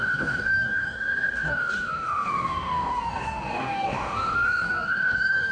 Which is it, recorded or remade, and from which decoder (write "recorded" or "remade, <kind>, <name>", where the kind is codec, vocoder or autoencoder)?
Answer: remade, codec, DAC